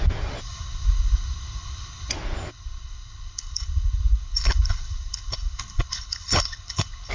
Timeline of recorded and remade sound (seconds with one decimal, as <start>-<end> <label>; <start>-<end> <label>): 0.0-0.4 recorded; 0.4-2.1 remade; 2.1-2.5 recorded; 2.5-7.1 remade